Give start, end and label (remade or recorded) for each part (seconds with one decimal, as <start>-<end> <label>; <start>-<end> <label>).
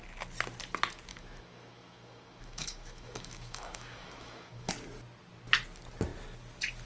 0.0-1.1 recorded; 1.1-4.7 remade; 4.7-6.9 recorded